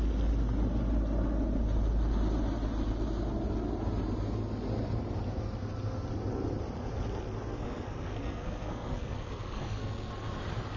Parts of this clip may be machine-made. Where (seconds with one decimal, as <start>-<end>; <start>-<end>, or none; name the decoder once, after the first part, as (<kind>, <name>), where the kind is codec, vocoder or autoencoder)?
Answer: 7.5-10.1 (codec, SNAC)